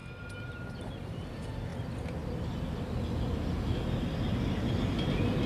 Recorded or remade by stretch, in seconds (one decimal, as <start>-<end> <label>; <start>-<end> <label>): 0.0-5.5 recorded